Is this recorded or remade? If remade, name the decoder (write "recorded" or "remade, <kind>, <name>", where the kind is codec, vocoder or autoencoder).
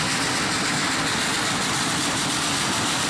recorded